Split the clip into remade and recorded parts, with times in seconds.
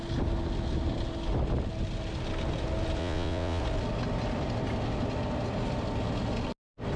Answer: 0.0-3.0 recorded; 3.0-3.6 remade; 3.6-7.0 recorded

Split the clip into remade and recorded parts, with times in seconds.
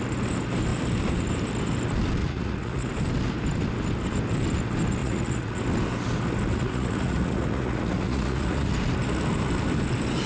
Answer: 0.0-2.2 recorded; 2.2-2.9 remade; 2.9-5.0 recorded; 5.0-5.6 remade; 5.6-6.5 recorded; 6.5-8.7 remade; 8.7-10.3 recorded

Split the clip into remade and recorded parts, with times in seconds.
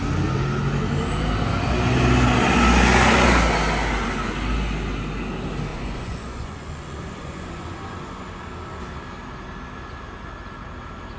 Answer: 0.0-5.7 recorded; 5.7-8.4 remade; 8.4-11.2 recorded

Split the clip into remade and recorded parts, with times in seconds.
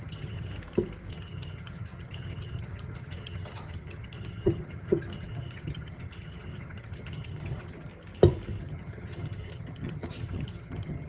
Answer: 0.0-0.5 remade; 0.5-1.1 recorded; 1.1-7.9 remade; 7.9-8.6 recorded; 8.6-11.1 remade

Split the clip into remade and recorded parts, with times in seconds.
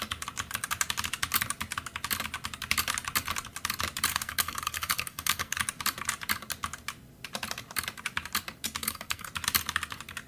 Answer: 0.0-4.1 recorded; 4.1-5.6 remade; 5.6-8.8 recorded; 8.8-9.3 remade; 9.3-10.3 recorded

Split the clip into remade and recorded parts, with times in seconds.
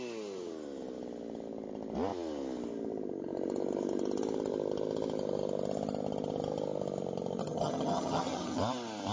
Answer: 0.0-7.4 recorded; 7.4-8.6 remade; 8.6-9.1 recorded